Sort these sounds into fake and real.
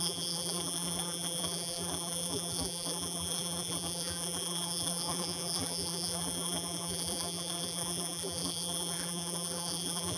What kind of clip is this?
fake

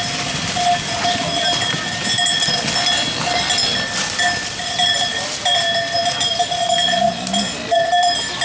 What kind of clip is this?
real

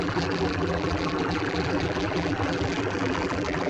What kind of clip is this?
fake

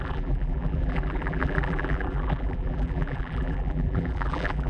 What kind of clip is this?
fake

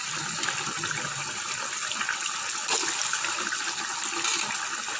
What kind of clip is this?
real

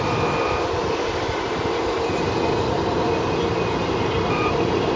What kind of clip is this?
real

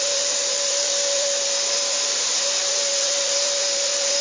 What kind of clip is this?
fake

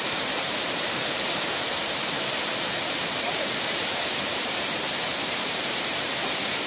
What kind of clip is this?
fake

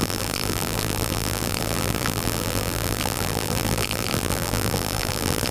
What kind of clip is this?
fake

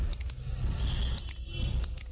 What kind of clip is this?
real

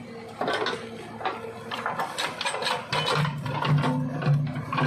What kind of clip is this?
real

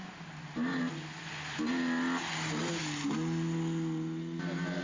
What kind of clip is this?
real